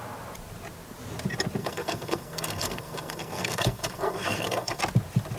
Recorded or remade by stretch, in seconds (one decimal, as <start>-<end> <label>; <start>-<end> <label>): 0.0-1.6 recorded; 1.6-4.8 remade; 4.8-5.4 recorded